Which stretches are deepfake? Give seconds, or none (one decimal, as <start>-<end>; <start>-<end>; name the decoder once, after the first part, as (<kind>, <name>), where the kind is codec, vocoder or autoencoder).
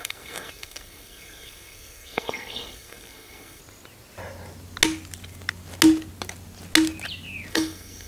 0.0-3.6 (codec, SNAC); 7.5-8.1